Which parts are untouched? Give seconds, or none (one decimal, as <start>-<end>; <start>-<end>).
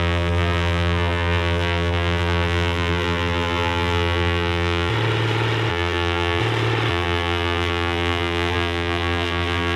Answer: 4.9-5.7; 6.4-6.9